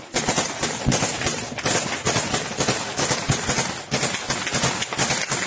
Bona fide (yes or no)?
yes